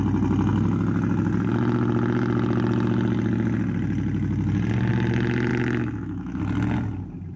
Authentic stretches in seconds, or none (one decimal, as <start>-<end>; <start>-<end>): 0.0-5.5; 6.4-7.4

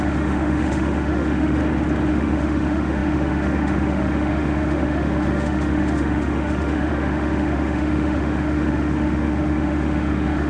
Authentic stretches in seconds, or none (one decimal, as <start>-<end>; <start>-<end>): 1.6-2.1

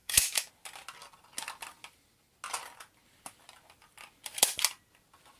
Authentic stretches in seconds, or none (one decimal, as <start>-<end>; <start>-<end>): 0.5-5.4